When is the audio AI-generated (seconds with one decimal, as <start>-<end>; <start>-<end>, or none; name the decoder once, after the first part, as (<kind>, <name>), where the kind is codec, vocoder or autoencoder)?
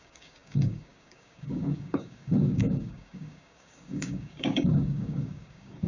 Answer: 0.0-5.9 (codec, DAC)